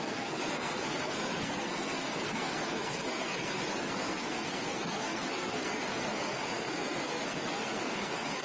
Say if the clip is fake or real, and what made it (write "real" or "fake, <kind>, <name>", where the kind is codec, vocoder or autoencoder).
fake, codec, SNAC